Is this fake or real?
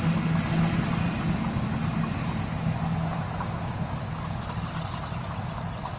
real